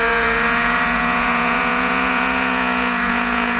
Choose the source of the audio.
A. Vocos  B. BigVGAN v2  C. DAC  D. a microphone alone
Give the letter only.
A